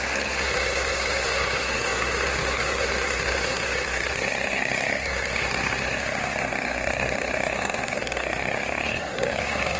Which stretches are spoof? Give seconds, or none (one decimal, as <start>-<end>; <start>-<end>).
0.0-9.8